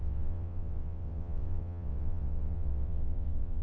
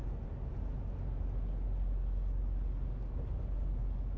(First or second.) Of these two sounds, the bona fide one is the second